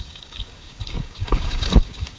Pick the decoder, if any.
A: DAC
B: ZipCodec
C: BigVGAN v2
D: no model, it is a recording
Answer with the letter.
A